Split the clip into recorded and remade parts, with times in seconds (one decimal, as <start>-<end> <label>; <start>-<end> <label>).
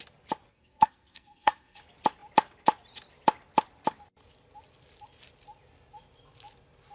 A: 0.0-0.5 recorded; 0.5-1.8 remade; 1.8-6.9 recorded